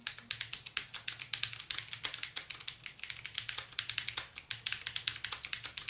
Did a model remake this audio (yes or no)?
no